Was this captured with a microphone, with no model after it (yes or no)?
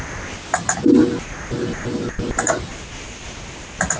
yes